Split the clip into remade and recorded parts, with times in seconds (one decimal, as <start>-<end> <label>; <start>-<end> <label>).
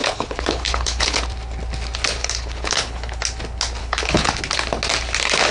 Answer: 0.0-1.2 remade; 1.2-2.2 recorded; 2.2-3.2 remade; 3.2-3.8 recorded; 3.8-4.4 remade; 4.4-5.5 recorded